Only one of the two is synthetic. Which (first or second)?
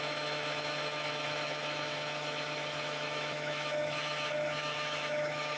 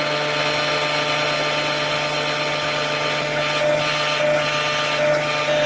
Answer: first